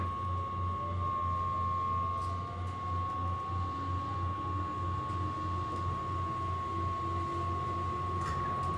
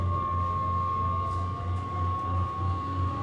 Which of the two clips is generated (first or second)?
second